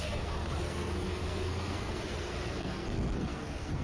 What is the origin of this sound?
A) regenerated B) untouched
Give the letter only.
A